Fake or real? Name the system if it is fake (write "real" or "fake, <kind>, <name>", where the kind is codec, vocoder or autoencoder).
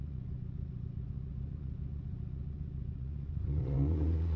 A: fake, vocoder, Vocos